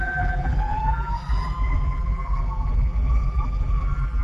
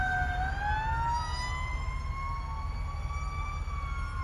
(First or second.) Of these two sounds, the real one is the second